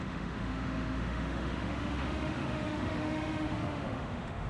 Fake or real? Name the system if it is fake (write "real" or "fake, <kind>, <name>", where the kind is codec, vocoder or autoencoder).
fake, autoencoder, DAC-VAE